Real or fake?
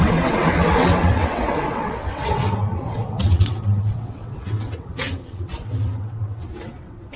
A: fake